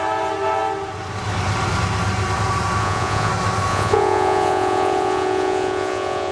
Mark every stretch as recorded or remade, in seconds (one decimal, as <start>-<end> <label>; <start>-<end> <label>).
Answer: 0.0-2.8 recorded; 2.8-3.3 remade; 3.3-3.7 recorded; 3.7-6.3 remade